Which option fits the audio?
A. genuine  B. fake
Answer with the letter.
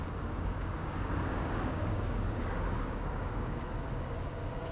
B